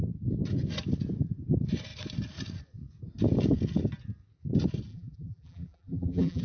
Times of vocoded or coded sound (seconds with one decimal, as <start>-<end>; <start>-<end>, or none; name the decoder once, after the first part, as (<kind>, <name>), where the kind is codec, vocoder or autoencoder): 4.9-6.4 (vocoder, BigVGAN v2)